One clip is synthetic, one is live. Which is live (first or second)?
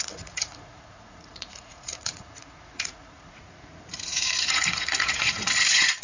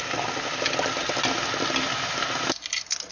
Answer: second